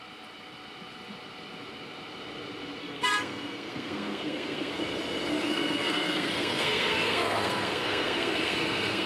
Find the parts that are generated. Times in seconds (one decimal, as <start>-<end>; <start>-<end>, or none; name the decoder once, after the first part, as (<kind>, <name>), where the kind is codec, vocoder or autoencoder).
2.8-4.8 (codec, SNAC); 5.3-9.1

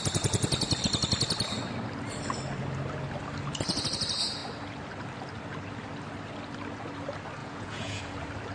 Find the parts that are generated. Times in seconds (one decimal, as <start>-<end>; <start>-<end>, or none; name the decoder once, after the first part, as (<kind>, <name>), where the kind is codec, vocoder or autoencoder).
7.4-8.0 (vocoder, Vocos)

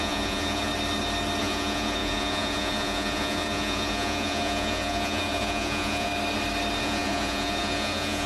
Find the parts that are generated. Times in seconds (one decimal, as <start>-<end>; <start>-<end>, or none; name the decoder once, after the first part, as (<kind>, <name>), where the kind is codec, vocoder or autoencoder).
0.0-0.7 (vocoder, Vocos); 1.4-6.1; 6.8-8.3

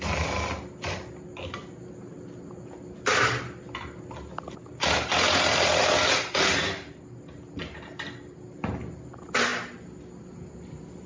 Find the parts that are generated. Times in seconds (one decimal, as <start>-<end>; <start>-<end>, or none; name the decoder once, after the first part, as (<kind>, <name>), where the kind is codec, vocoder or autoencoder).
none